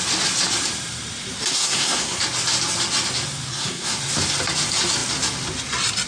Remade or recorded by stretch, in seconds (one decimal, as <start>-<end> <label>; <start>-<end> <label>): 0.0-1.5 recorded; 1.5-2.2 remade; 2.2-3.5 recorded; 3.5-4.0 remade; 4.0-6.1 recorded